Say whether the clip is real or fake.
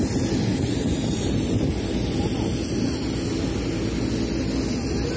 real